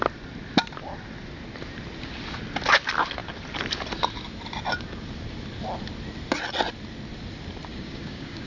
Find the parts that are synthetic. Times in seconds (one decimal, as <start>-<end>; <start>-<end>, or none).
7.7-8.5